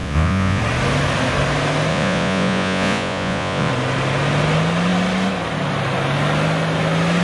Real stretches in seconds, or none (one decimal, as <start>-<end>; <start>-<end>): 0.6-1.9; 3.7-7.2